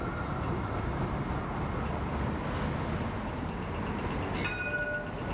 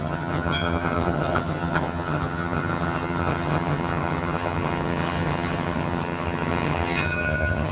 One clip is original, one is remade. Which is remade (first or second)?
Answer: second